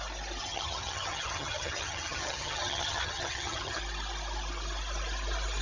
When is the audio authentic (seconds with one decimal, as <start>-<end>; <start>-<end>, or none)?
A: 0.0-0.4; 3.8-5.6